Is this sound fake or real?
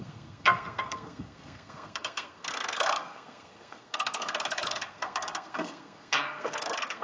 fake